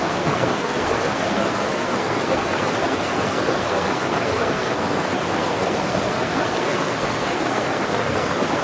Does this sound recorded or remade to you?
remade